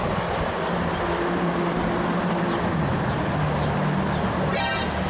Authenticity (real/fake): real